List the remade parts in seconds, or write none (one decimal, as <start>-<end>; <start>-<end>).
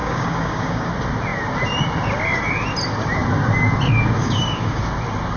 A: 0.0-0.9; 4.2-4.8